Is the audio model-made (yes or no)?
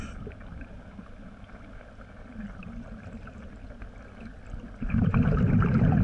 no